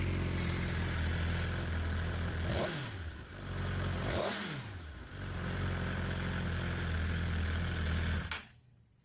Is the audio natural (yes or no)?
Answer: yes